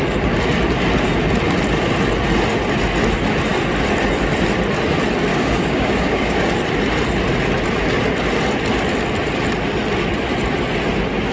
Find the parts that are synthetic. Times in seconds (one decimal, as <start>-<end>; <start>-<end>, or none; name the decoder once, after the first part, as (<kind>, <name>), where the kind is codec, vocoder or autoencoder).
5.3-6.5 (codec, DAC)